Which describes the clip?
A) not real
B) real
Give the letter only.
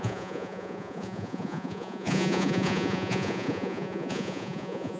A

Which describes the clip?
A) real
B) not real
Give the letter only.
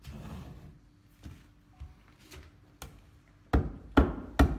A